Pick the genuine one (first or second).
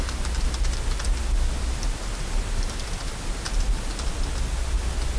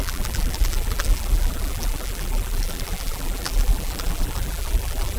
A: first